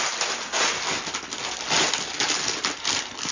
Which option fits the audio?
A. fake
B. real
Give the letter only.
B